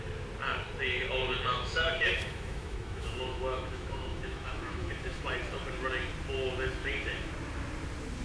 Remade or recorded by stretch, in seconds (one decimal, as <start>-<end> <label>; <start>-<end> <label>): 0.0-1.5 recorded; 1.5-5.2 remade; 5.2-6.8 recorded; 6.8-7.3 remade; 7.3-8.2 recorded

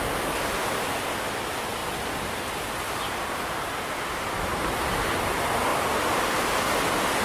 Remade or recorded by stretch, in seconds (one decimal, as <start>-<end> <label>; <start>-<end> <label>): 0.0-7.2 recorded